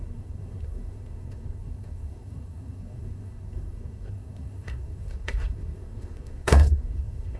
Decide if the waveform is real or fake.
fake